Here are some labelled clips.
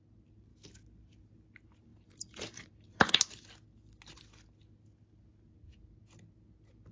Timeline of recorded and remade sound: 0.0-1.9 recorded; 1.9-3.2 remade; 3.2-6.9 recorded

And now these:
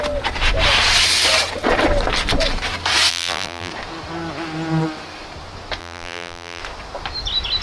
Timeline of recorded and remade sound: 0.0-3.1 recorded; 3.1-3.7 remade; 3.7-5.8 recorded; 5.8-6.6 remade; 6.6-7.6 recorded